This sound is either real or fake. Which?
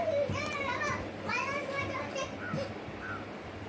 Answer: real